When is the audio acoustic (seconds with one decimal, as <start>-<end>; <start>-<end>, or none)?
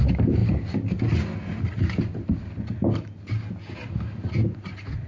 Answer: 0.0-5.1